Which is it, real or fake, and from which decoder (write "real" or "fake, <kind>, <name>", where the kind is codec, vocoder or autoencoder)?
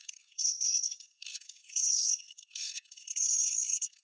fake, codec, SNAC